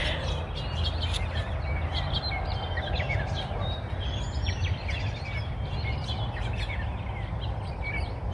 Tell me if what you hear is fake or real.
real